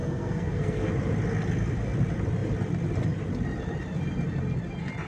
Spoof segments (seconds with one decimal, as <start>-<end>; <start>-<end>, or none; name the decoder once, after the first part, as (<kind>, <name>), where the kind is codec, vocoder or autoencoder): 0.0-0.9 (codec, SNAC)